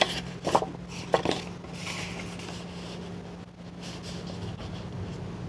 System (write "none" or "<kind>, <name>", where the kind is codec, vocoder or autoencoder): none